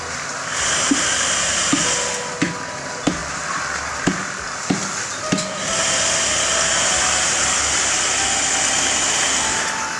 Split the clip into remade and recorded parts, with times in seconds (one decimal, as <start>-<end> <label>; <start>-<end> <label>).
0.0-10.0 recorded